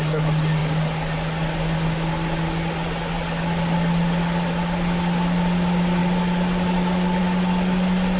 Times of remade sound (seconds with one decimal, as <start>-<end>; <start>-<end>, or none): none